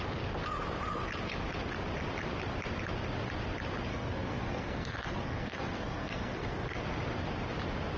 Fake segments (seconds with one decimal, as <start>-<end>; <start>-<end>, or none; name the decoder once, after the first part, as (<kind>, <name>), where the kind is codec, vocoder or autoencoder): 3.9-6.8 (codec, SNAC)